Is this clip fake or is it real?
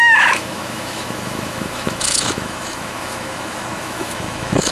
fake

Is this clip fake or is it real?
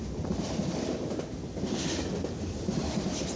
real